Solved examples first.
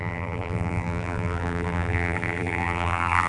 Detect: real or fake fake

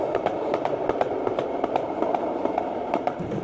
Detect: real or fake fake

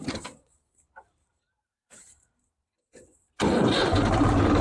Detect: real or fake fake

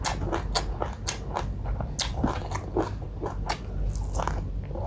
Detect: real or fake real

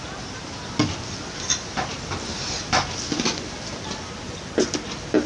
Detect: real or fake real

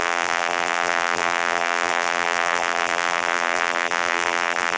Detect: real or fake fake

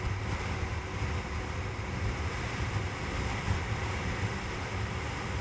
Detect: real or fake fake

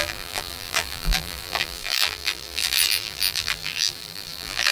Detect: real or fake fake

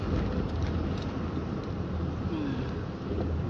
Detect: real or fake real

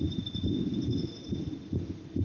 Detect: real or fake fake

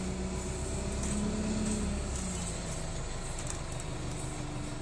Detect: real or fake real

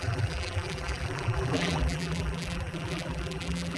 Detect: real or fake fake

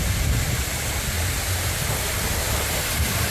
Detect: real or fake real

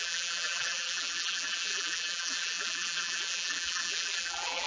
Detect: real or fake fake